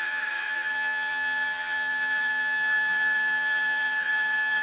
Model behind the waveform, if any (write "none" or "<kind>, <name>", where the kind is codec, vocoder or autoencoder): vocoder, HiFi-GAN